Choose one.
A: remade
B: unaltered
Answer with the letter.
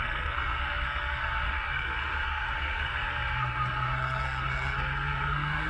A